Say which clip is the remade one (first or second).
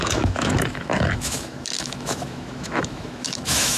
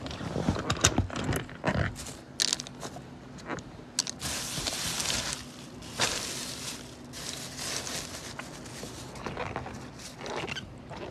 first